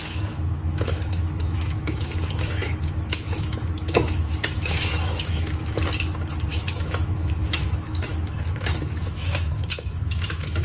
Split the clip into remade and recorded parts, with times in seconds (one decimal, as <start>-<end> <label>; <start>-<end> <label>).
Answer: 0.0-5.8 remade; 5.8-6.5 recorded; 6.5-10.6 remade